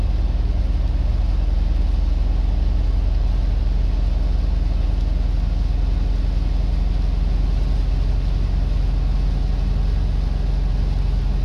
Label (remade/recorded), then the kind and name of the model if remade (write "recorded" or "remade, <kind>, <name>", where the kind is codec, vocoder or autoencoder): recorded